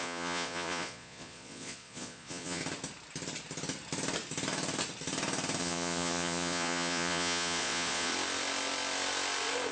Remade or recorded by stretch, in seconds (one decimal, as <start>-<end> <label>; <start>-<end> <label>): 0.0-2.6 remade; 2.6-5.6 recorded; 5.6-8.1 remade; 8.1-9.7 recorded